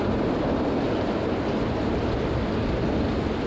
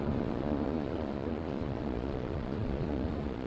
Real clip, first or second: first